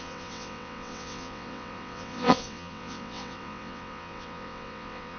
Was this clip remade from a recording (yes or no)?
yes